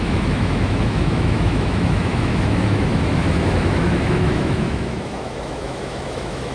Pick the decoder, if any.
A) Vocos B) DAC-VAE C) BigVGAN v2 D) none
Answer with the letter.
B